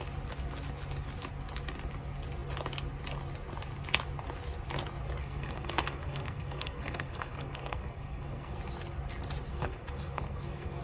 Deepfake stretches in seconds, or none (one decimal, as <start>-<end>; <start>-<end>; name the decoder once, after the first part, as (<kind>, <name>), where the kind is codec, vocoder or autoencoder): 5.2-8.6 (codec, SNAC); 9.5-10.8